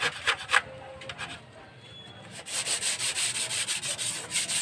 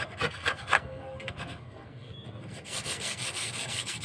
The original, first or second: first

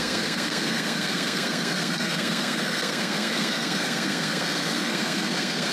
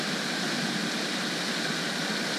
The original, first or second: second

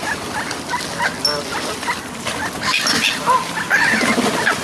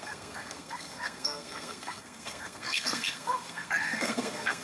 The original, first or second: first